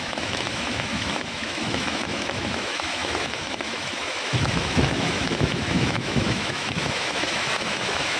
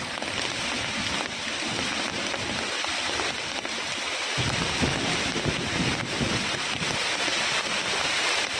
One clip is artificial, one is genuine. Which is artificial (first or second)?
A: first